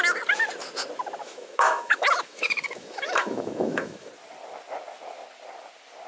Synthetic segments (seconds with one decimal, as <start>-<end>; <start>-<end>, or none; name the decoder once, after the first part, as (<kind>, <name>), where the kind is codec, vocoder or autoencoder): 1.2-4.1 (autoencoder, DAC-VAE)